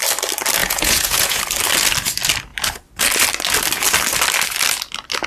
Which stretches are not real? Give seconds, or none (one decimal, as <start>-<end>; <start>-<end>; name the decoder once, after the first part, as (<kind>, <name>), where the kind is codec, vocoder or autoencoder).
0.6-1.4 (vocoder, Vocos)

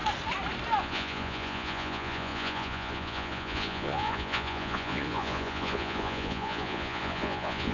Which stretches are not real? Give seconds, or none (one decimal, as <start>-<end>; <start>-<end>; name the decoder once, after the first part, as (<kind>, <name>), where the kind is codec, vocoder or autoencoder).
0.8-7.7 (vocoder, Vocos)